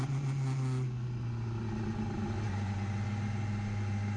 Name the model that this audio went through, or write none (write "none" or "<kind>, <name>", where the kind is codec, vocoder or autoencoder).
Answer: none